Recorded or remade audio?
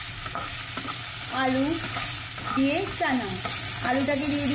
recorded